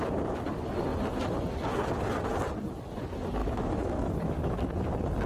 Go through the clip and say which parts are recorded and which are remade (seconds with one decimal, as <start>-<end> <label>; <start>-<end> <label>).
0.0-3.4 recorded; 3.4-4.6 remade; 4.6-5.3 recorded